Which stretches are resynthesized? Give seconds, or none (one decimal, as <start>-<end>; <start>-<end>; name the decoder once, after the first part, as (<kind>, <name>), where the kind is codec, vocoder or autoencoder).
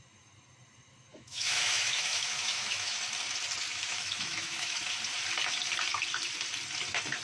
1.1-3.0 (autoencoder, DAC-VAE); 3.7-4.8